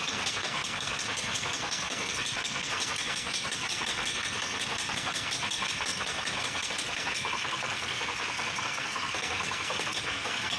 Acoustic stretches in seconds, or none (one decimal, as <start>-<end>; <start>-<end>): none

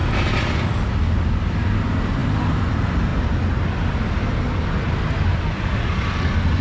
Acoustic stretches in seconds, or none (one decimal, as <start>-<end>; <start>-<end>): 0.0-6.6

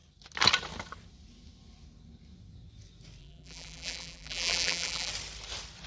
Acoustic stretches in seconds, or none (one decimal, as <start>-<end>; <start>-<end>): 0.0-3.2; 5.1-5.9